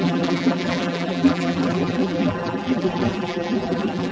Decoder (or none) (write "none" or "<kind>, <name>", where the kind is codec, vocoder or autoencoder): vocoder, BigVGAN v2